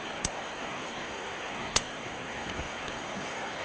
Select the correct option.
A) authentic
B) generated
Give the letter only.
B